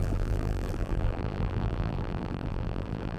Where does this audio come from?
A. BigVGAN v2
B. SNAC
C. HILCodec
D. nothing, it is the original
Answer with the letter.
A